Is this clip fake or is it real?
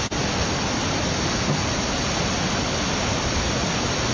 real